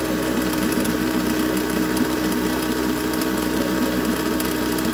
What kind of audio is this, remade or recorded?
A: remade